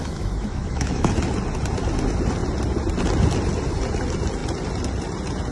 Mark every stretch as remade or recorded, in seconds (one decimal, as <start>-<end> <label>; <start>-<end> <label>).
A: 0.0-1.1 remade; 1.1-5.5 recorded